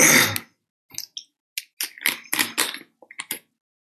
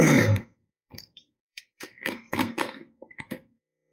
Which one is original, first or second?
first